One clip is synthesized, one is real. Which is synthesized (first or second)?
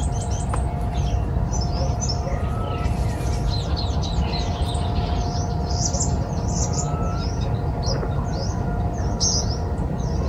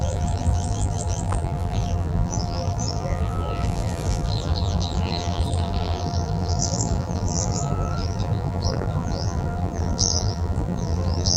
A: second